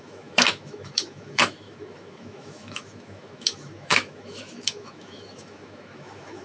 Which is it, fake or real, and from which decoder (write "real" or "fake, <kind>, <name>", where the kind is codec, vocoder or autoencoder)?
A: fake, autoencoder, DAC-VAE